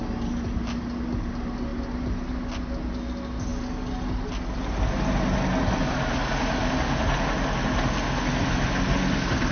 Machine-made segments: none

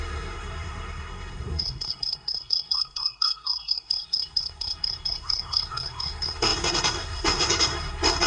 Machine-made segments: 0.0-8.3

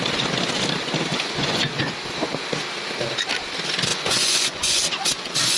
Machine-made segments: 1.1-1.8; 3.9-5.6

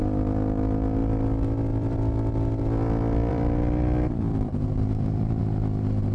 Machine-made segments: 1.0-2.6; 3.3-5.4

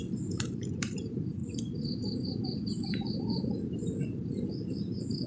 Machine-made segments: 0.0-1.4; 2.7-5.3

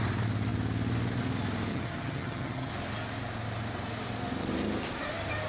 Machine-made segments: 1.7-2.7

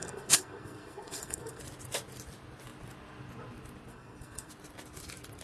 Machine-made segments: 0.0-1.6; 3.9-4.5

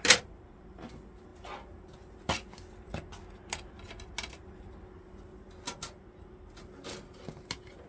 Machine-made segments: none